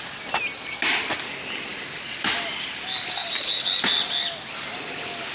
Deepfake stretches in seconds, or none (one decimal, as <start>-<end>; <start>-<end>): none